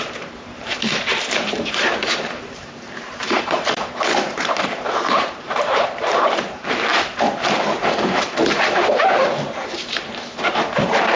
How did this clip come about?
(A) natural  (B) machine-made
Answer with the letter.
B